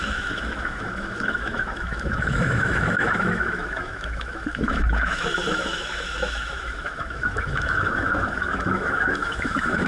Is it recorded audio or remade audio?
remade